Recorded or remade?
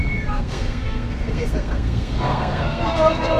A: remade